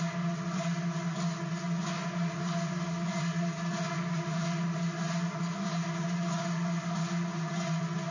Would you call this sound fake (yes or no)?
no